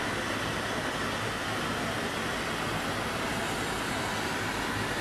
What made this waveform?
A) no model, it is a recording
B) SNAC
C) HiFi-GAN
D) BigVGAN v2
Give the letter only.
A